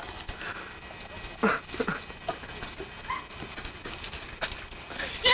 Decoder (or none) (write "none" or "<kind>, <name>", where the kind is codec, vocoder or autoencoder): none